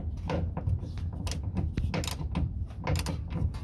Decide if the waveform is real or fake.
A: real